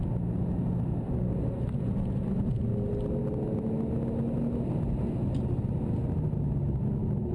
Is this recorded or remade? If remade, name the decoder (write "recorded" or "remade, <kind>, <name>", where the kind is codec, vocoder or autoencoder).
recorded